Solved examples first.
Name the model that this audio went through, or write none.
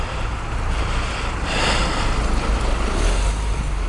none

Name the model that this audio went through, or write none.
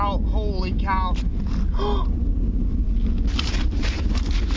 none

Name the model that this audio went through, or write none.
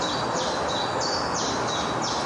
none